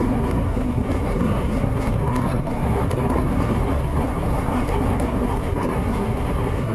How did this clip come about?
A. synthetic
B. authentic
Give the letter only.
A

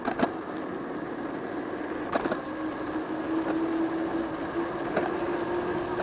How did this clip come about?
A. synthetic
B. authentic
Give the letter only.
B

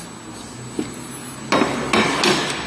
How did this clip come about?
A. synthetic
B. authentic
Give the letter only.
B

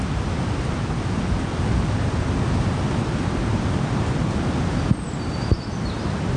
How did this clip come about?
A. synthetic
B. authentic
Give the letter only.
B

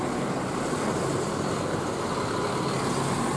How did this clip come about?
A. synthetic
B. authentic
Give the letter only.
B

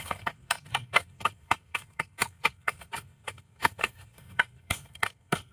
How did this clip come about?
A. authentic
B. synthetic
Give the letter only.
B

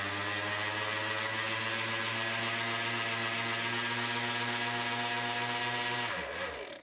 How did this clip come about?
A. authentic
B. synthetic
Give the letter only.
A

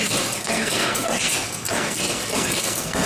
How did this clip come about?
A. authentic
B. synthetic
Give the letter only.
B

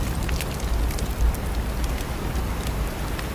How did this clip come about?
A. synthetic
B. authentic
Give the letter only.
B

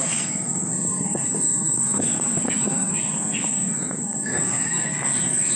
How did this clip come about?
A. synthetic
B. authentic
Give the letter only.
A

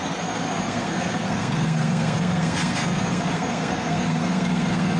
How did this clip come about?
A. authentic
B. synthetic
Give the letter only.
B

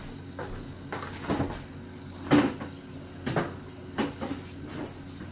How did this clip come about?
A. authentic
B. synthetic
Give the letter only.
A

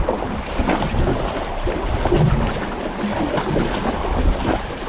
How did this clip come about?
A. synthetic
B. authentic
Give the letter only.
B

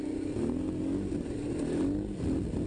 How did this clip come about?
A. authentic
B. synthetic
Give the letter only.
A